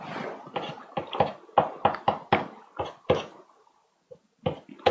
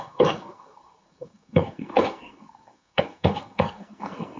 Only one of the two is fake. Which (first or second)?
second